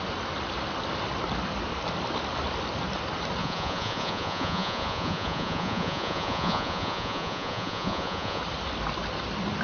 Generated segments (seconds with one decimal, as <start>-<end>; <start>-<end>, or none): 3.4-8.4